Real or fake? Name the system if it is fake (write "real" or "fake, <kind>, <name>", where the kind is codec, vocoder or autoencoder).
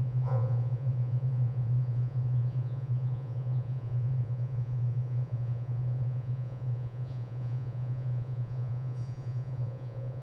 fake, vocoder, Vocos